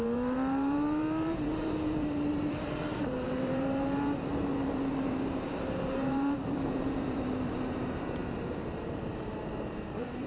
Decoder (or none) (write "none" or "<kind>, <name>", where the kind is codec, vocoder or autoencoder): vocoder, BigVGAN v2